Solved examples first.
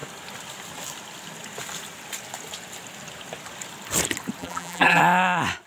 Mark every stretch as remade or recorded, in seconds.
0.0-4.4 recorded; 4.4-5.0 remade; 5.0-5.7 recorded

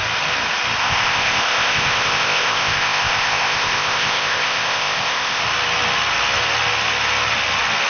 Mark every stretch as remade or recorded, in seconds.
0.0-0.8 recorded; 0.8-5.4 remade; 5.4-7.9 recorded

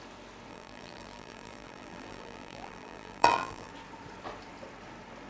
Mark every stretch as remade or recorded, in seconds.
0.0-0.5 recorded; 0.5-3.7 remade; 3.7-5.3 recorded

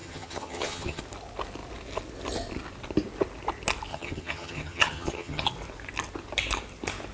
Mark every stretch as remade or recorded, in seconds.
0.0-1.0 remade; 1.0-3.9 recorded; 3.9-5.5 remade; 5.5-7.1 recorded

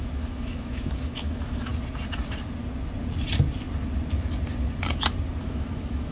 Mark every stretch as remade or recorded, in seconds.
0.0-1.7 remade; 1.7-5.4 recorded; 5.4-6.1 remade